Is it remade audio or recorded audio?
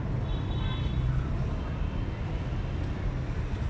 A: recorded